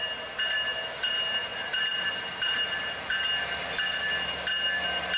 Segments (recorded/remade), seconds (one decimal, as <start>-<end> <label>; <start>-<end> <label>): 0.0-5.2 recorded